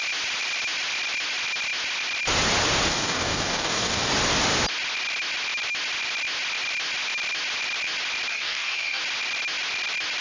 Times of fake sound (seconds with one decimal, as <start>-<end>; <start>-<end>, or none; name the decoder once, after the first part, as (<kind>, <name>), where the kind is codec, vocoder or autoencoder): 2.9-4.1 (codec, DAC); 8.3-9.0